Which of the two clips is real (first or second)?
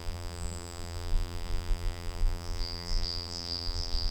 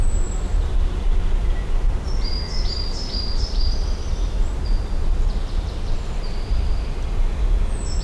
second